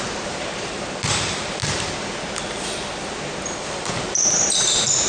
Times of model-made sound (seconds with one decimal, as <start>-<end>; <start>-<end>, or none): none